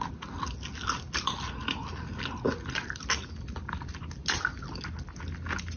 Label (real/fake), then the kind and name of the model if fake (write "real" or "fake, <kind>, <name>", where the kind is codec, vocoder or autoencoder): real